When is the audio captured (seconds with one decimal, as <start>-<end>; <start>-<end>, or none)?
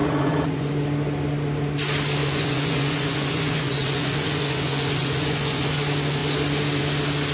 0.7-2.2; 5.7-7.3